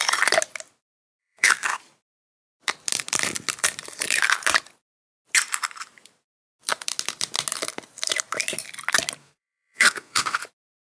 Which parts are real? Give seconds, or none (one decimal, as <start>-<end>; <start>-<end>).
0.0-1.2; 1.8-9.2; 10.4-10.9

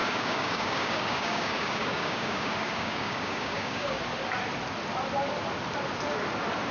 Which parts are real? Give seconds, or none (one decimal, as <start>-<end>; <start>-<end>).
4.0-6.7

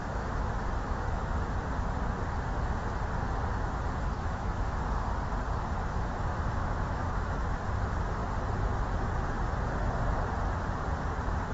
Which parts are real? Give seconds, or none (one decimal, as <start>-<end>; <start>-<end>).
1.4-4.1; 4.8-6.3; 7.6-11.5

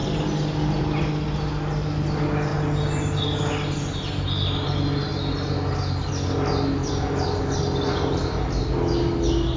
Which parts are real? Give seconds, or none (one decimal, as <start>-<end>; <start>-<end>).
0.0-6.8; 7.4-9.6

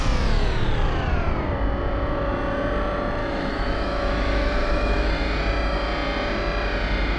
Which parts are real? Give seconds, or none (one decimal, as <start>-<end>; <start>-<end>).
0.0-3.2; 5.1-7.2

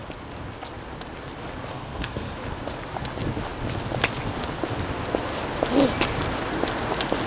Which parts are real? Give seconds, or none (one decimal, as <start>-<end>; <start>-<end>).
0.0-1.7; 2.4-7.3